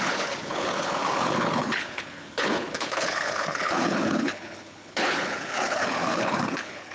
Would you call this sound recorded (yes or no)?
no